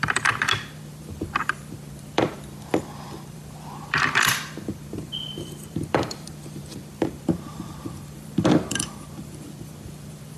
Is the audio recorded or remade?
remade